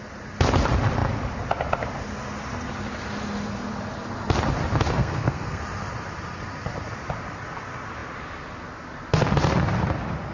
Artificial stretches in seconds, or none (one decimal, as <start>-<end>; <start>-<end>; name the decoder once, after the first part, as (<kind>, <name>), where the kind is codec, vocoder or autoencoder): 5.0-5.6 (codec, SNAC)